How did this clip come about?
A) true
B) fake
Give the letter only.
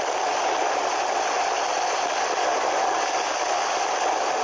A